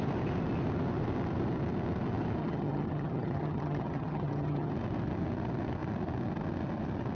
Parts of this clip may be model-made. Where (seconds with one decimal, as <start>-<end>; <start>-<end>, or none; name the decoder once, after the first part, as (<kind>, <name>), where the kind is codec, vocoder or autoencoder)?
2.4-4.7 (vocoder, HiFi-GAN)